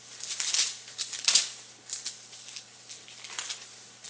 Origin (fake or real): real